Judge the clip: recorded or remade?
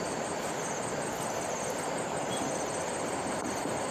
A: recorded